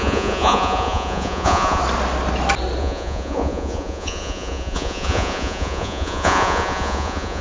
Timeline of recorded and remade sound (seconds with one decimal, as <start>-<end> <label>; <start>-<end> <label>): 0.0-1.8 remade; 1.8-2.8 recorded; 2.8-7.4 remade